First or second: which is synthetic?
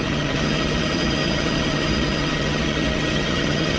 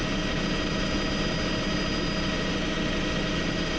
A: first